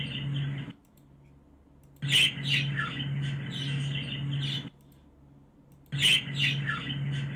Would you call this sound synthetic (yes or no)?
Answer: no